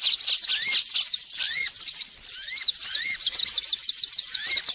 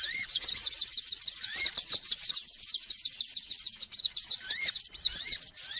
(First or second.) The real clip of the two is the first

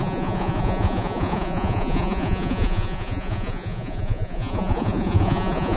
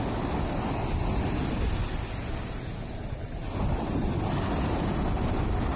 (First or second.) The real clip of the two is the second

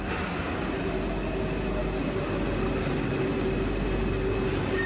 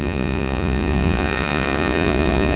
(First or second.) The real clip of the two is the first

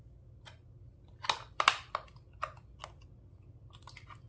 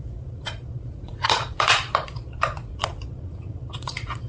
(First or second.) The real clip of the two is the first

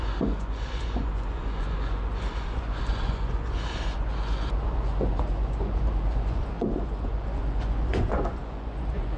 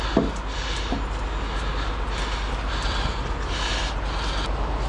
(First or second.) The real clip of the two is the second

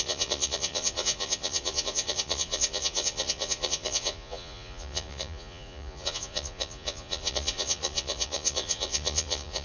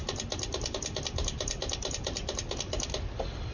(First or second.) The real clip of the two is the second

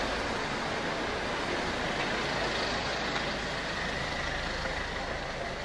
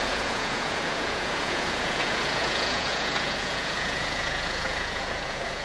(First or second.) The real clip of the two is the first